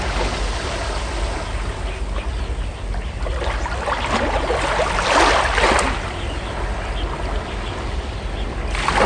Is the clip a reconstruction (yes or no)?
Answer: no